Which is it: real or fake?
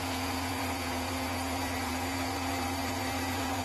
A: fake